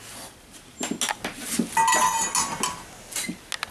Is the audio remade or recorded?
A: recorded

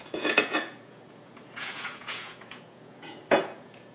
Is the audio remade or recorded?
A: remade